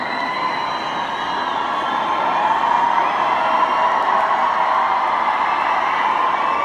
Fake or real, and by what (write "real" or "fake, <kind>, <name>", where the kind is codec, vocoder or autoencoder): real